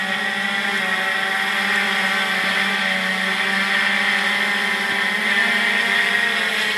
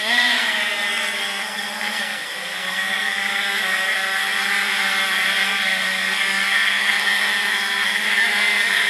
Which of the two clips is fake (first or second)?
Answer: second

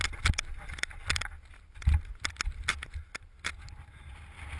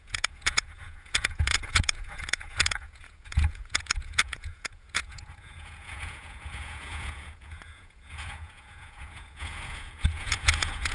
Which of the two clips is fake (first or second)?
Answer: second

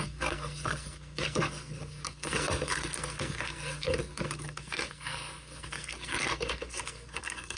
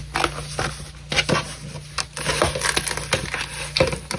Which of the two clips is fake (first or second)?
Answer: first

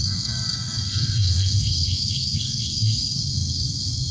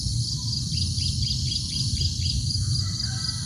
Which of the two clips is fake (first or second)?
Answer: first